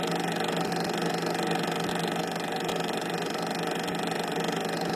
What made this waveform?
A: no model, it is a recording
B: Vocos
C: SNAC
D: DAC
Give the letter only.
A